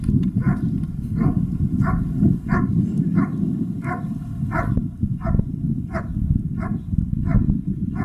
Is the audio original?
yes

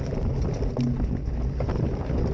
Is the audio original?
yes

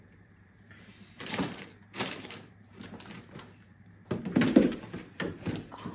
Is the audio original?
no